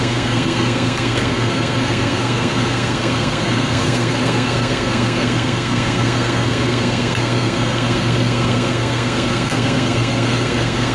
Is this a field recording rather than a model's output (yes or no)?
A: no